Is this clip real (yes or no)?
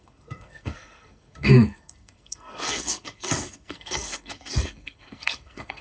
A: no